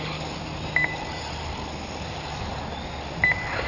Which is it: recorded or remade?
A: recorded